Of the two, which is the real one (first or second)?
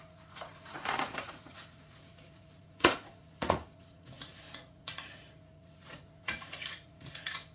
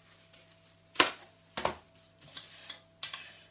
second